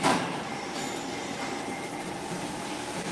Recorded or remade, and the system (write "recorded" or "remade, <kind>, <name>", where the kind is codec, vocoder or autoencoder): remade, vocoder, BigVGAN v2